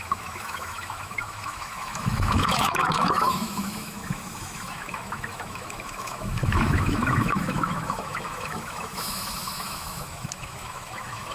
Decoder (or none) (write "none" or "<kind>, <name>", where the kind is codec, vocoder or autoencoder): autoencoder, DAC-VAE